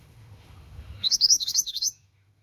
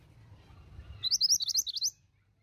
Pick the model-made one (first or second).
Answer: first